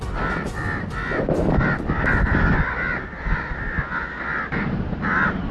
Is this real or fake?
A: real